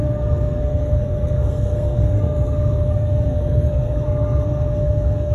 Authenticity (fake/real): fake